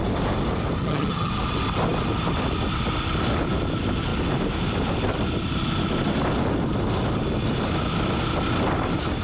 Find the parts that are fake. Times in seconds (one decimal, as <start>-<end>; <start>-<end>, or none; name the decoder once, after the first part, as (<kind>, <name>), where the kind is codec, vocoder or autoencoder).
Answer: 0.8-1.3 (vocoder, HiFi-GAN)